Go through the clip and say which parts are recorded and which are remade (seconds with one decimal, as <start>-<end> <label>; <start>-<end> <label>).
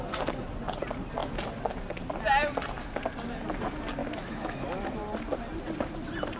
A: 0.0-4.0 recorded; 4.0-4.7 remade; 4.7-6.4 recorded